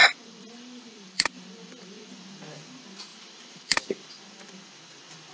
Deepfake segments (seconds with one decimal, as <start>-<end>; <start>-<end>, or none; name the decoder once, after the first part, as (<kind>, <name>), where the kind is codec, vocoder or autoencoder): 0.0-2.1 (vocoder, BigVGAN v2); 3.1-4.1